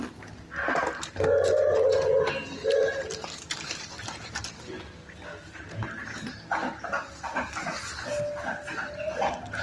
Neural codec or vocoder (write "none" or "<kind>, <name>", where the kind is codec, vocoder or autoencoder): none